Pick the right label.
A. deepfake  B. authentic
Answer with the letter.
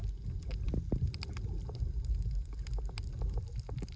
B